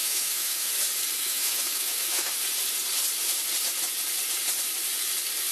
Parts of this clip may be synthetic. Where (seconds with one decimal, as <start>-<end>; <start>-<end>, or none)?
0.0-0.7; 1.2-2.3